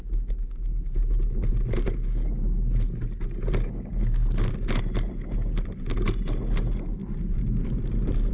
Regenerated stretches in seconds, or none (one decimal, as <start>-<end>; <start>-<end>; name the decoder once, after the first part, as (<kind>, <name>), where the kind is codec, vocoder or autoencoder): none